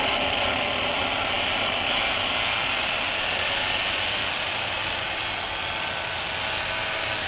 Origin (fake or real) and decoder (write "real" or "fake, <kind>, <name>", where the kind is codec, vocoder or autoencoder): real